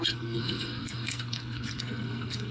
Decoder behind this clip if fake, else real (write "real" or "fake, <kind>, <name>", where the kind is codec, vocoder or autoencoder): fake, codec, SNAC